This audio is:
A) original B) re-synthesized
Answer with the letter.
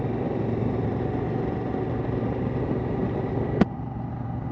A